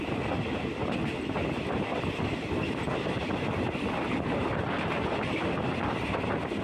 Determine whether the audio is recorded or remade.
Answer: recorded